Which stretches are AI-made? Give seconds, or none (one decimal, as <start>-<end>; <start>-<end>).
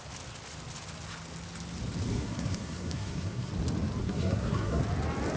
2.1-3.5; 4.0-4.8